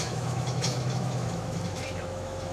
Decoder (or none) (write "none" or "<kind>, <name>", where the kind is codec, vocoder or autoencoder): autoencoder, DAC-VAE